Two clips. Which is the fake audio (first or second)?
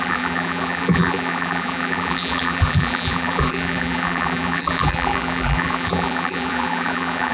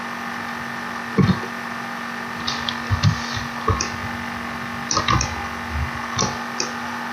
first